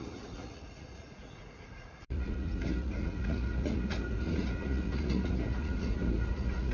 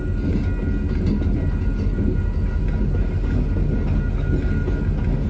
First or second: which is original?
second